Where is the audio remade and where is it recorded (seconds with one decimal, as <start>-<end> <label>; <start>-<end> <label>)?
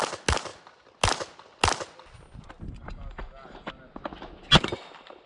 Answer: 0.0-5.3 recorded